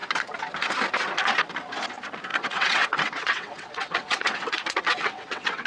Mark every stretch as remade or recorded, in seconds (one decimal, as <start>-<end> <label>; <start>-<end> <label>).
0.0-2.3 recorded; 2.3-5.7 remade